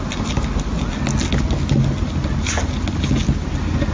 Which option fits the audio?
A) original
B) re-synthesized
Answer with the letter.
A